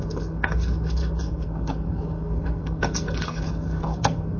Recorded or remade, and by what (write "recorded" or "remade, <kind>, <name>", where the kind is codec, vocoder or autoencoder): remade, codec, SNAC